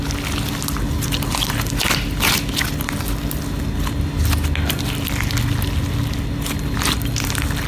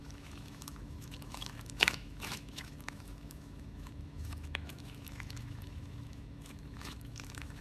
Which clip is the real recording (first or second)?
first